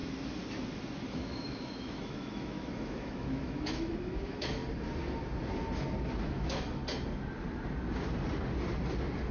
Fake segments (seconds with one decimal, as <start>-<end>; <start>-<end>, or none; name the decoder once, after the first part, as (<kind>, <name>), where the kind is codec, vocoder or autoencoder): 1.1-4.6 (autoencoder, DAC-VAE); 6.2-6.8